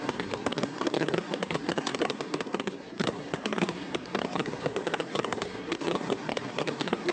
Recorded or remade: remade